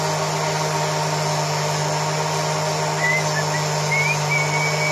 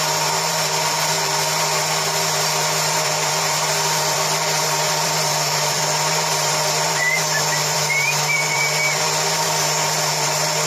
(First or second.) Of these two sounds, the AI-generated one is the second